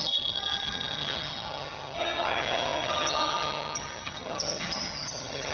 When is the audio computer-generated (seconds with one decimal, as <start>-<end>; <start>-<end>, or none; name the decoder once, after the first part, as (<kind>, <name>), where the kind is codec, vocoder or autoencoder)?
0.0-5.5 (vocoder, HiFi-GAN)